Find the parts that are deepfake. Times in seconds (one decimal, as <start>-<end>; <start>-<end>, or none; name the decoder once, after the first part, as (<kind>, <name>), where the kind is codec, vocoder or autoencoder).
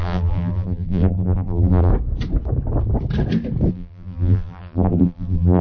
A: 0.0-1.9 (vocoder, BigVGAN v2); 3.7-5.6